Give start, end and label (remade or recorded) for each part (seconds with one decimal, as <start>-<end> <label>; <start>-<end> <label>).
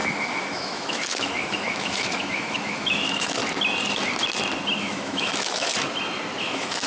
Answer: 0.0-3.4 remade; 3.4-4.8 recorded; 4.8-5.7 remade; 5.7-6.4 recorded; 6.4-6.9 remade